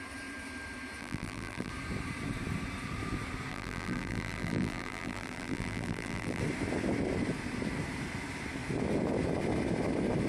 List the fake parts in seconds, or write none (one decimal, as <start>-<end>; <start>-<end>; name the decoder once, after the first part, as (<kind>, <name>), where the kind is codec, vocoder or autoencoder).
1.0-1.7 (vocoder, BigVGAN v2); 3.5-6.4